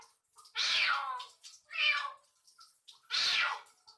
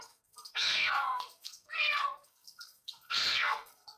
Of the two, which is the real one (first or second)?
first